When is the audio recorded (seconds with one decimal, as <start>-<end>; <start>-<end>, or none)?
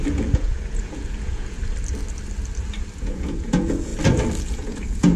1.6-3.0; 3.9-4.5